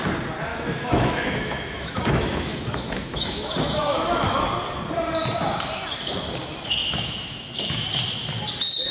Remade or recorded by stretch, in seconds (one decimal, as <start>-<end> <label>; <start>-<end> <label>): 0.0-0.5 recorded; 0.5-4.4 remade; 4.4-6.8 recorded; 6.8-7.9 remade; 7.9-8.9 recorded